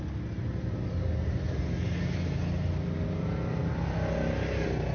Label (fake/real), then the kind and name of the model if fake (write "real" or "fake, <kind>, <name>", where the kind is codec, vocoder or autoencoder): real